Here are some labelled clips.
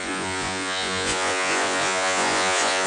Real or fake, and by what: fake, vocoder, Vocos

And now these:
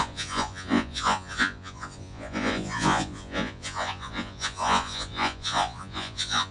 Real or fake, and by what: fake, vocoder, Vocos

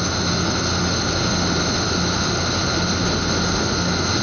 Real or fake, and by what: real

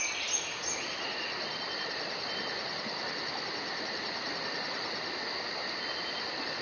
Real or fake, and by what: real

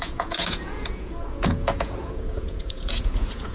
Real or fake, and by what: fake, vocoder, Vocos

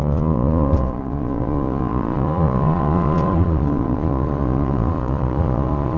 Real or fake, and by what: fake, vocoder, Vocos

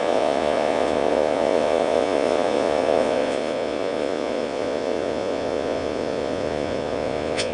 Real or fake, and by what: fake, vocoder, Vocos